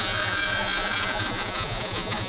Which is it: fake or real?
fake